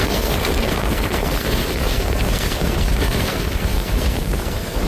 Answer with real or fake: fake